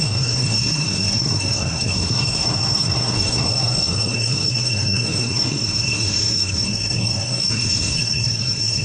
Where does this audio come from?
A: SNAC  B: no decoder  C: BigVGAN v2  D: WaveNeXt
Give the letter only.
A